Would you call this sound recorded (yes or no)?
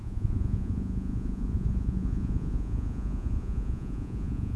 no